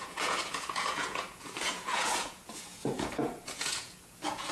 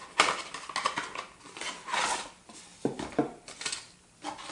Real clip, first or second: second